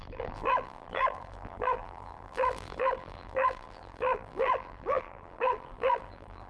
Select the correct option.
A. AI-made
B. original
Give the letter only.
A